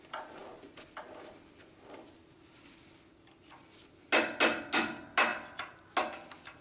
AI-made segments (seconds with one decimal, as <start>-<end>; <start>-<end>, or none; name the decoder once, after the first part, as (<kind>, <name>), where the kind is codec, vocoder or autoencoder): none